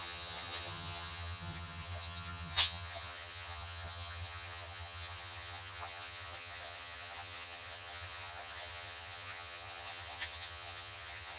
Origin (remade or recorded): remade